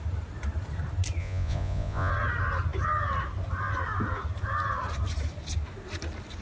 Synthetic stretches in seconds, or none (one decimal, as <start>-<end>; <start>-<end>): 1.2-2.1